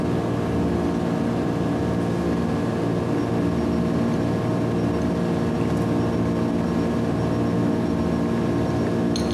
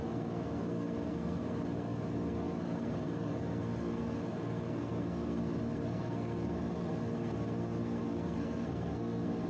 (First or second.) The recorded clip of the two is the first